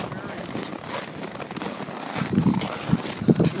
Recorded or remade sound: recorded